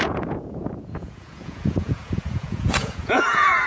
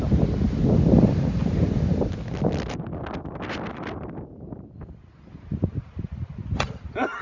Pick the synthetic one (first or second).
first